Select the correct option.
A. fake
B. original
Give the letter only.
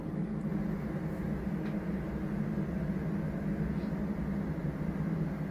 B